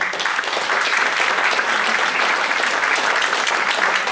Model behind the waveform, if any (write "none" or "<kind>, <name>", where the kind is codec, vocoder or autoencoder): none